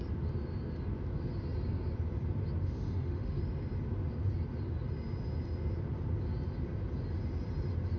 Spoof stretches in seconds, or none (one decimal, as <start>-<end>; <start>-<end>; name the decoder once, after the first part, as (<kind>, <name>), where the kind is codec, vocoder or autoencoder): 2.6-3.4 (autoencoder, DAC-VAE)